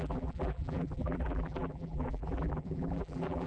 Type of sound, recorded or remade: remade